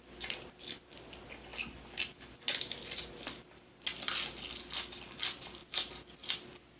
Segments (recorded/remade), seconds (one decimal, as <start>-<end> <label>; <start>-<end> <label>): 0.0-6.8 recorded